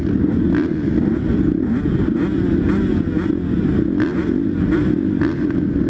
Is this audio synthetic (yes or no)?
no